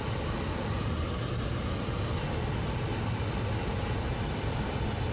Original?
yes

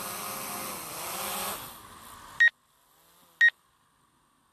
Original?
yes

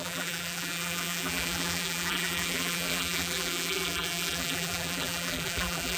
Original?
no